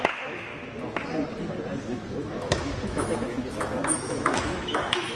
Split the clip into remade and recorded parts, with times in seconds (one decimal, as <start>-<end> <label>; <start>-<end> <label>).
0.0-0.5 remade; 0.5-1.8 recorded; 1.8-5.2 remade